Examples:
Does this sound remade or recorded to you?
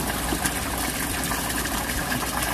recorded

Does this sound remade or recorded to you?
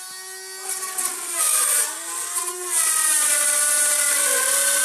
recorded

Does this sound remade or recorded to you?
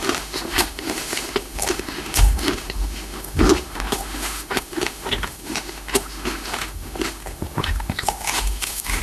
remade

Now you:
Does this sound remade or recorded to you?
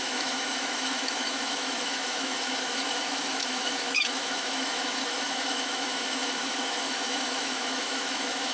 remade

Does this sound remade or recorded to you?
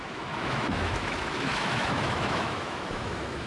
remade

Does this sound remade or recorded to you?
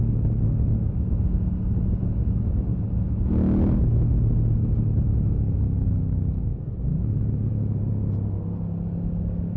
recorded